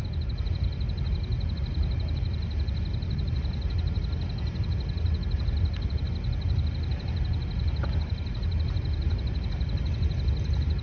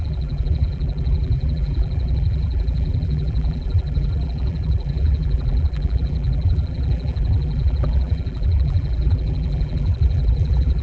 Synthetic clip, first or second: second